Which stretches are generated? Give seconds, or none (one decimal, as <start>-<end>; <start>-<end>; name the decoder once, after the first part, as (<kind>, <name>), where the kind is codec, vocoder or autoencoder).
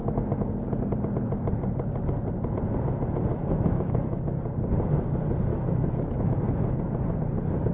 0.0-0.5 (autoencoder, DAC-VAE); 3.3-4.4; 5.5-6.4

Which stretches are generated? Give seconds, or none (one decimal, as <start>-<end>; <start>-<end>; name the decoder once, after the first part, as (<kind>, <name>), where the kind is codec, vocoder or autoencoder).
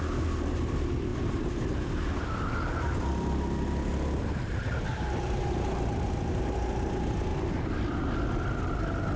none